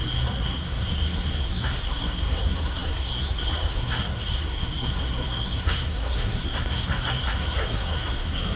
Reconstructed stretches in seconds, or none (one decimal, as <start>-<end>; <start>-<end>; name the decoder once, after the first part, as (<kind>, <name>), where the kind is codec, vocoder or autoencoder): 0.0-8.6 (codec, SNAC)